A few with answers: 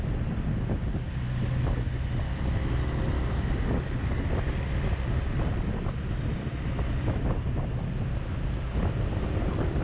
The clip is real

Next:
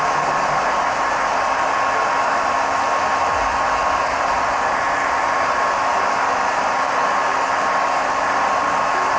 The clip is real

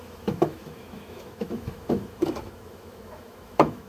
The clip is fake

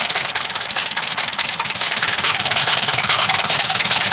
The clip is fake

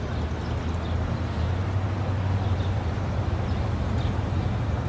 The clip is real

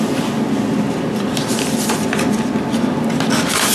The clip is real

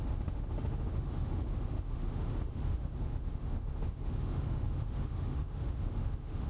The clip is fake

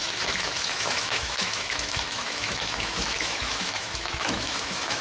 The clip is fake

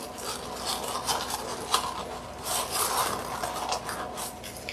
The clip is real